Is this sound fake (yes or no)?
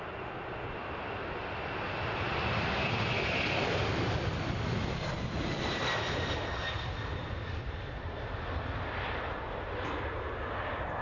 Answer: no